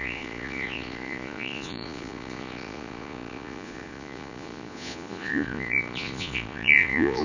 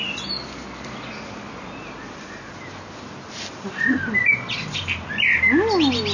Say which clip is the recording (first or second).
second